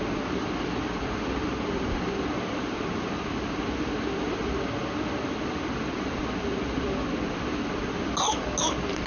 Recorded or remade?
recorded